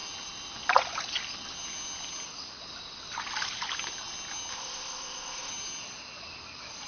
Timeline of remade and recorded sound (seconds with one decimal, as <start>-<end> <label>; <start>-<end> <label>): 0.0-4.5 recorded; 4.5-5.5 remade; 5.5-6.9 recorded